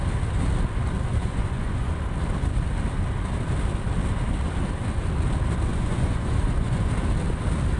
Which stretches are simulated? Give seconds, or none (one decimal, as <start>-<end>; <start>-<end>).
1.2-2.0; 5.7-6.9